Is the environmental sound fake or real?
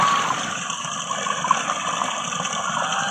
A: real